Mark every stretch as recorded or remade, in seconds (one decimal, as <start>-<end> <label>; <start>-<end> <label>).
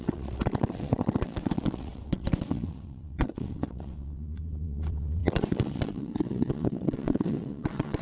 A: 0.0-8.0 remade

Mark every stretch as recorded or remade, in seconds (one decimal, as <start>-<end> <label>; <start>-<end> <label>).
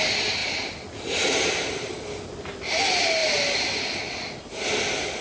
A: 0.0-5.2 recorded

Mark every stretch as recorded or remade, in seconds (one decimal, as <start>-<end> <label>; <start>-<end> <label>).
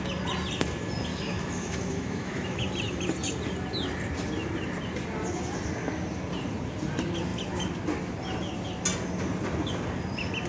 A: 0.0-1.1 recorded; 1.1-2.7 remade; 2.7-10.5 recorded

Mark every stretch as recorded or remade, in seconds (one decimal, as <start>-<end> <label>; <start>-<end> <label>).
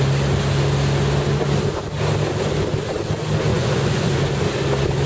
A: 0.0-3.5 recorded; 3.5-4.2 remade; 4.2-5.1 recorded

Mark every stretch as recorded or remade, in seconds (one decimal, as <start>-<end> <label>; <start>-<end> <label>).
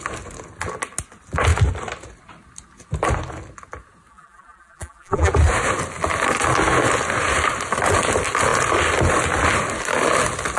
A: 0.0-4.1 recorded; 4.1-5.3 remade; 5.3-10.6 recorded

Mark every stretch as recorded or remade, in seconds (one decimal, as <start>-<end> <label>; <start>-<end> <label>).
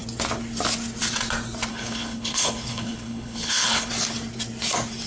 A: 0.0-1.7 recorded; 1.7-3.9 remade; 3.9-5.1 recorded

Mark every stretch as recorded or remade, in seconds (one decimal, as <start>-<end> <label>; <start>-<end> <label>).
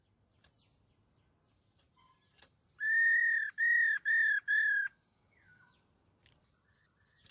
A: 0.0-3.2 recorded; 3.2-5.7 remade; 5.7-7.3 recorded